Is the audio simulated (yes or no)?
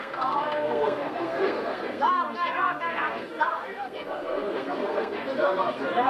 yes